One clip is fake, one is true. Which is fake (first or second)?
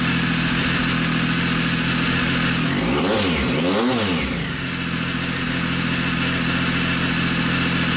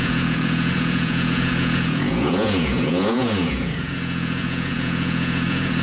second